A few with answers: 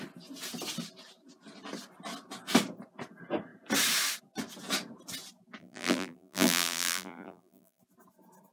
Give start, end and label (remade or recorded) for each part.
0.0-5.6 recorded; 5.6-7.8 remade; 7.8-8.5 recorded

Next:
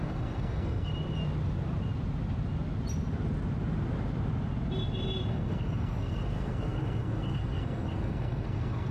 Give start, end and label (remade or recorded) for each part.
0.0-0.9 remade; 0.9-5.3 recorded; 5.3-8.9 remade

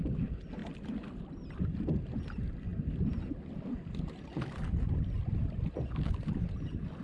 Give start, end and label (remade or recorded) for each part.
0.0-7.0 recorded

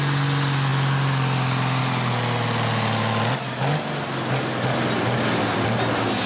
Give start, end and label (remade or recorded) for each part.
0.0-6.3 recorded

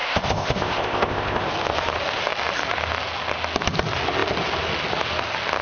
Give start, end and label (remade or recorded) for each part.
0.0-1.4 remade; 1.4-5.6 recorded

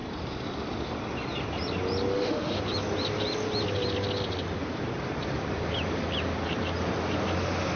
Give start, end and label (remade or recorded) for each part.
0.0-2.1 recorded; 2.1-2.6 remade; 2.6-7.8 recorded